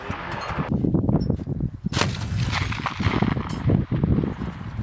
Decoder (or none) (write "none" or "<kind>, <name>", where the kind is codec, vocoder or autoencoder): none